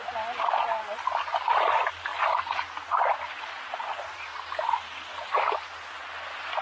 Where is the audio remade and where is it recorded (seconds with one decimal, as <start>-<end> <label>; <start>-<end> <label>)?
0.0-6.6 recorded